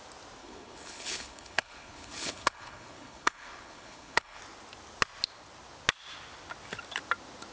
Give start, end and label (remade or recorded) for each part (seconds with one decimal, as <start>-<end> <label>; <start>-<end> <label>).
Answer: 0.0-0.4 recorded; 0.4-4.4 remade; 4.4-7.5 recorded